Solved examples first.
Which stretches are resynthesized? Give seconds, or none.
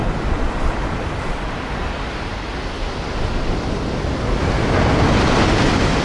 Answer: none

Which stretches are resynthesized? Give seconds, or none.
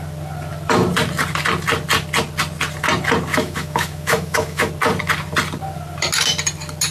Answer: 3.3-4.7 (autoencoder, DAC-VAE)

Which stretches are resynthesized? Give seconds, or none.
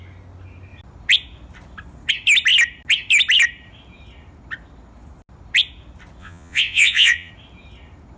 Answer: 6.2-7.3 (vocoder, Vocos)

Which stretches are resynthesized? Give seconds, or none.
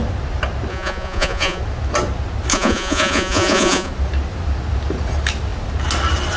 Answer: 0.7-1.6 (vocoder, Vocos); 2.5-3.9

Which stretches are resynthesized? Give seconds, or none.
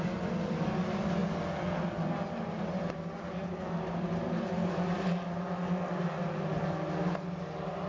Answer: none